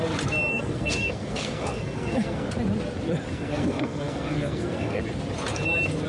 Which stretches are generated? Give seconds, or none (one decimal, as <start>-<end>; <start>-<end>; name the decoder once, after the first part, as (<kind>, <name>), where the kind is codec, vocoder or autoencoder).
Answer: 0.5-2.5 (codec, SNAC); 3.3-5.0